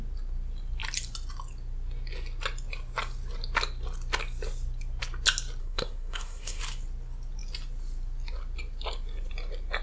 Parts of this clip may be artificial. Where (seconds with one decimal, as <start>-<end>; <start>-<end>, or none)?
5.6-6.6